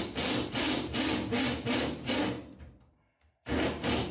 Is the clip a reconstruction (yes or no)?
no